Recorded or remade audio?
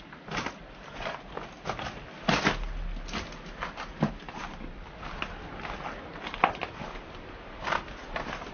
recorded